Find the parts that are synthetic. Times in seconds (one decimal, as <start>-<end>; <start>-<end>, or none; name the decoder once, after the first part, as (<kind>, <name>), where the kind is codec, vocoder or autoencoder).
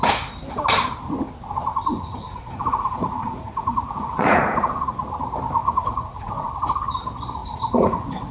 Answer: 1.9-4.8 (vocoder, Vocos); 5.6-6.5; 7.4-8.3